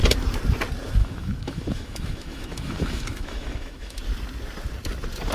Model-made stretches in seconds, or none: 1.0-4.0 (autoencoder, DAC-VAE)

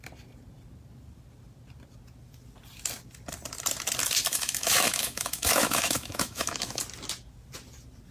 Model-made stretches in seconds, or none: 4.3-6.8 (autoencoder, DAC-VAE)

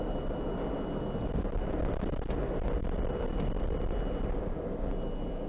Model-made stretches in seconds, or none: none

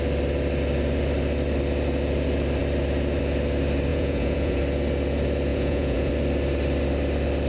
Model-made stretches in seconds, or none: 3.9-4.6 (vocoder, Vocos); 5.5-6.1

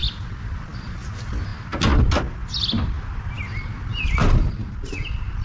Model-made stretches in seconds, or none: none

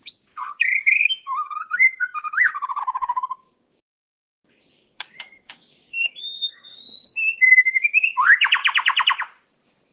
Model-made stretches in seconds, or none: 0.0-8.6 (codec, DAC)